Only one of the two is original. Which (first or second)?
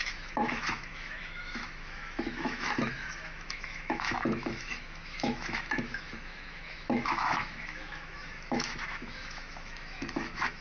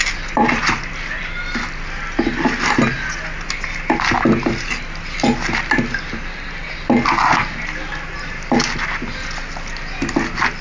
second